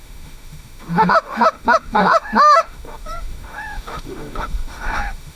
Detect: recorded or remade remade